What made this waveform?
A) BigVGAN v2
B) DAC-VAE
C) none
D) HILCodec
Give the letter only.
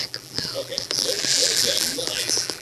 A